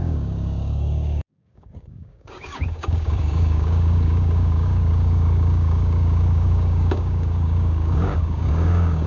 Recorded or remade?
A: remade